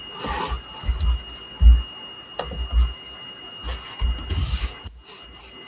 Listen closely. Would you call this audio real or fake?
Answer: real